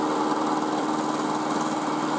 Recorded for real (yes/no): yes